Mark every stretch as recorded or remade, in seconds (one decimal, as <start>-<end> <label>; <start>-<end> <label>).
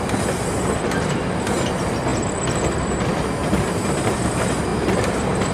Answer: 0.0-3.4 recorded; 3.4-4.2 remade; 4.2-4.7 recorded; 4.7-5.5 remade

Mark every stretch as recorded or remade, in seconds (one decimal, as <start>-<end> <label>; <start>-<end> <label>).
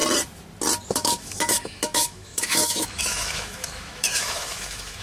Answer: 0.0-0.9 recorded; 0.9-5.0 remade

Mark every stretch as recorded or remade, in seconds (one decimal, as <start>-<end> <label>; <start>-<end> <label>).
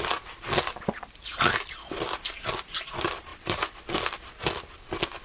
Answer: 0.0-3.3 recorded; 3.3-3.8 remade; 3.8-5.2 recorded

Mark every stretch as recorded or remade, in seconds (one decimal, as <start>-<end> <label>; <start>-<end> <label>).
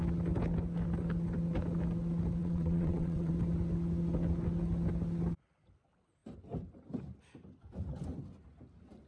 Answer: 0.0-2.4 recorded; 2.4-3.3 remade; 3.3-9.1 recorded